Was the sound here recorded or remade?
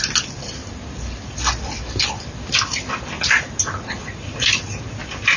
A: recorded